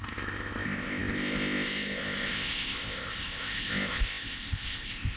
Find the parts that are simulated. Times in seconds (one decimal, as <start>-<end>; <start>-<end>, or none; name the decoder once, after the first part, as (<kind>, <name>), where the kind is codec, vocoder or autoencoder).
0.0-5.2 (codec, ZipCodec)